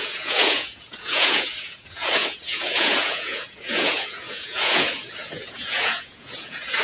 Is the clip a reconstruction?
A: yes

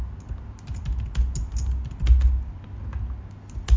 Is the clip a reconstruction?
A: no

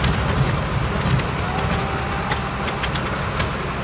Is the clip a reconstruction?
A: no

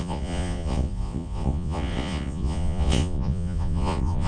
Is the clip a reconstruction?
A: yes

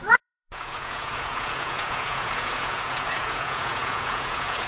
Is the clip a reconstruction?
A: yes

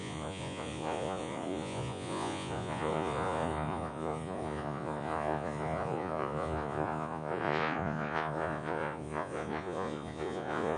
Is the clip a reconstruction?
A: yes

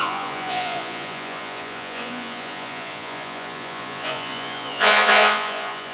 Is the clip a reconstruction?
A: yes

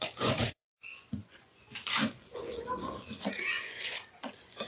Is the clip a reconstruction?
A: yes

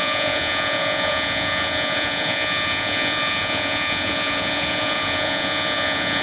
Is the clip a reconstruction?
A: yes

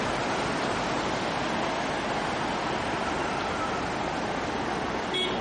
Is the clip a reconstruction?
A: no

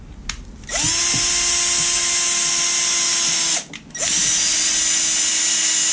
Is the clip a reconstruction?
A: no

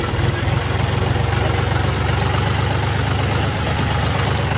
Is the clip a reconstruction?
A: no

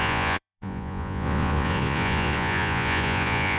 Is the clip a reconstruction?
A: yes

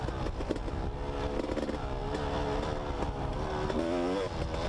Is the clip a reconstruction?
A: no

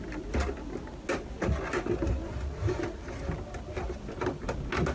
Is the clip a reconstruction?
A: no